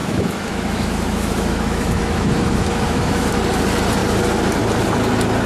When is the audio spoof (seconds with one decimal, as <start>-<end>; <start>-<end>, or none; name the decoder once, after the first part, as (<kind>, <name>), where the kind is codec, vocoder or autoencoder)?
0.0-3.3 (autoencoder, DAC-VAE)